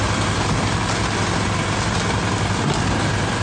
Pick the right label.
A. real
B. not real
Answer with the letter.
A